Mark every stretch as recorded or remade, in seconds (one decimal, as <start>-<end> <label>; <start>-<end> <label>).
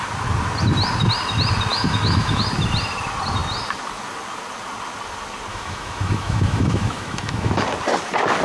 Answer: 0.0-1.7 recorded; 1.7-2.4 remade; 2.4-5.5 recorded; 5.5-7.5 remade; 7.5-8.4 recorded